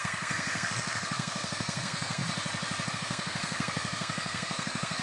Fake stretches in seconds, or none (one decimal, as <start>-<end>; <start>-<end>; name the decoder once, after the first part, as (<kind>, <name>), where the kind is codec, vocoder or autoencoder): 0.0-2.2 (codec, SNAC); 2.9-5.0